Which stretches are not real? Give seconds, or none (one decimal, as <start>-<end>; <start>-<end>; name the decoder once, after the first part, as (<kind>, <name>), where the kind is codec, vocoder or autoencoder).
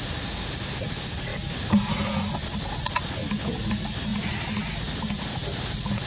none